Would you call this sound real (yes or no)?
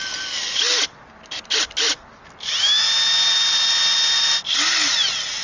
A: yes